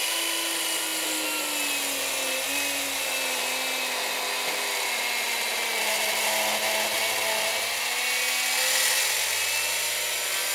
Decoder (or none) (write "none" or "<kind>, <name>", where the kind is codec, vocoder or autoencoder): none